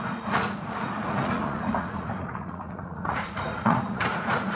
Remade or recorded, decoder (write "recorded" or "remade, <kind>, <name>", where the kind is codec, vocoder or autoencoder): remade, vocoder, Vocos